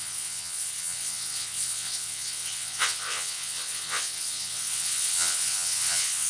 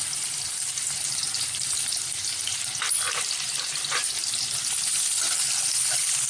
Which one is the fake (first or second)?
first